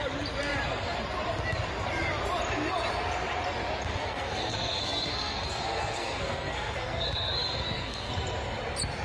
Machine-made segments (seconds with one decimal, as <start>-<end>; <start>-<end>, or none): 3.9-8.1